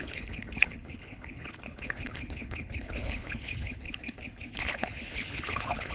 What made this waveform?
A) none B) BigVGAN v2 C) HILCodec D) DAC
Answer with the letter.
C